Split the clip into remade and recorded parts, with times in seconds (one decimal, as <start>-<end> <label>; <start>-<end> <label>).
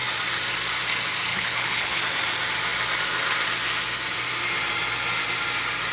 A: 0.0-1.3 recorded; 1.3-2.0 remade; 2.0-5.9 recorded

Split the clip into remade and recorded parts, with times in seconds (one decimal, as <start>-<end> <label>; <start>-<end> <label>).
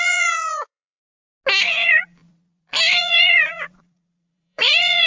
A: 0.0-1.0 remade; 1.0-1.6 recorded; 1.6-2.2 remade; 2.2-3.0 recorded; 3.0-5.1 remade